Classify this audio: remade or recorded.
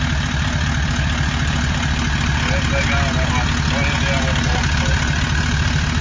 recorded